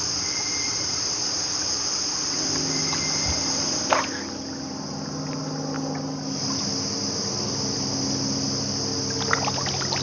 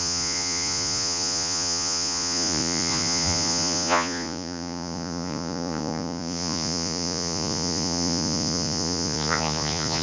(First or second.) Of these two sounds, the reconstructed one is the second